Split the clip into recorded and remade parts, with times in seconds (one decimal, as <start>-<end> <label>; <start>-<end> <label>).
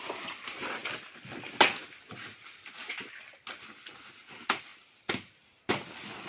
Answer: 0.0-6.3 recorded